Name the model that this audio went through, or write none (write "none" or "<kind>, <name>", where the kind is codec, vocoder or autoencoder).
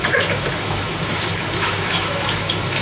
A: autoencoder, DAC-VAE